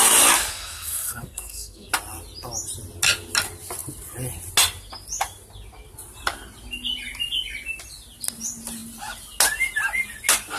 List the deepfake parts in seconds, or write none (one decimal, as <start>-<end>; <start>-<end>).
0.5-1.9